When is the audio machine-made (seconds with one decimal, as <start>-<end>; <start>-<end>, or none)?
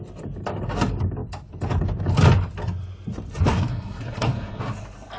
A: 3.5-4.6